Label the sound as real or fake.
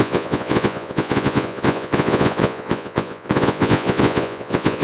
fake